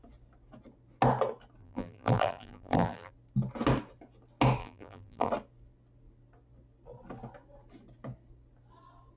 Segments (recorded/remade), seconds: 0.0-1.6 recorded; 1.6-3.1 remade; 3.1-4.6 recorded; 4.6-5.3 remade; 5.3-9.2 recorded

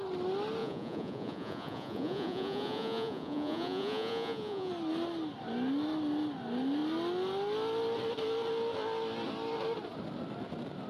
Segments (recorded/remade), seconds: 0.0-0.6 recorded; 0.6-4.7 remade; 4.7-10.9 recorded